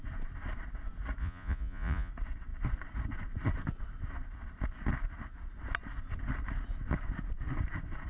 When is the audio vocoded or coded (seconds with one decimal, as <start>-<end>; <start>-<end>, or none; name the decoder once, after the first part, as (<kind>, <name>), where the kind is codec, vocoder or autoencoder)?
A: 1.2-2.1 (vocoder, Vocos)